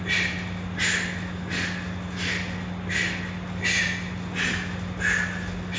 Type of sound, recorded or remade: recorded